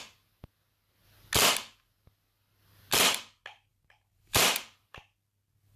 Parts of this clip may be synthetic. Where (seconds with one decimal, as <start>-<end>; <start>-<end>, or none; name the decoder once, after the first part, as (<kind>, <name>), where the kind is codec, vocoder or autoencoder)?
3.7-4.4 (vocoder, BigVGAN v2)